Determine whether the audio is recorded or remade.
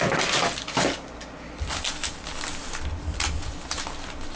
recorded